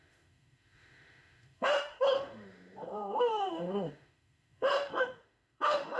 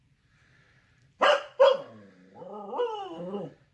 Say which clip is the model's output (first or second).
first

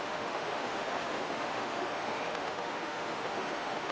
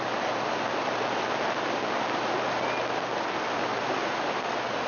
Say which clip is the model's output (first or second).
first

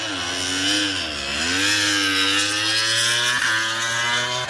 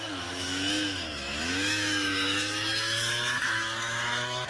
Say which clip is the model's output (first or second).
second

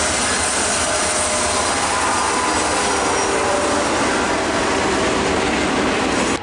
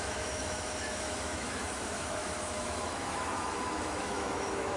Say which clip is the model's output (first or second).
second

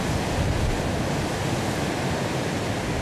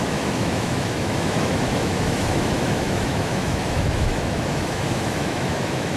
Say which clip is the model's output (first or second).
second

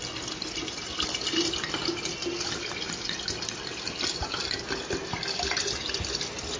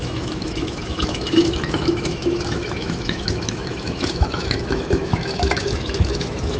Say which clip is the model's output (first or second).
second